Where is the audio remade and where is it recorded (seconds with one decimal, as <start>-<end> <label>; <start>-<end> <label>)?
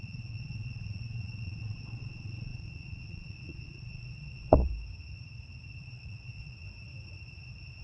0.0-4.7 remade; 4.7-5.8 recorded; 5.8-6.6 remade; 6.6-7.8 recorded